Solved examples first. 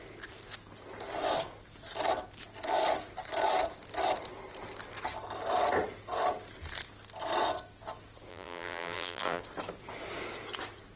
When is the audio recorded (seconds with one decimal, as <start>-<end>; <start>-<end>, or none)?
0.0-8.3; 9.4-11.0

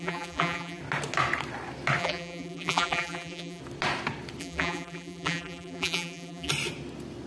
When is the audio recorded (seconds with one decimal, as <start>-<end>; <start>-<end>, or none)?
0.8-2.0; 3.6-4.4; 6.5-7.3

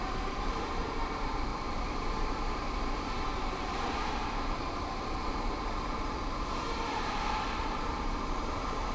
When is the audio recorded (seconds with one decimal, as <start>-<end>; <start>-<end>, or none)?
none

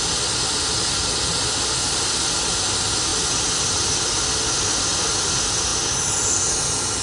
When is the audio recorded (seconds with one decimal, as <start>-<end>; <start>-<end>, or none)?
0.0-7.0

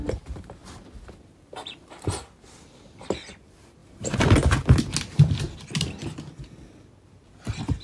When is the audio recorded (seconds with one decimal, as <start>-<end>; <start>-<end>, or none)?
0.0-7.8

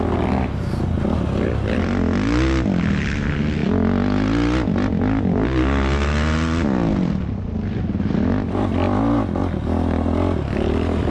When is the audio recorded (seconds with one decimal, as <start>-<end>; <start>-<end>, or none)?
0.0-11.1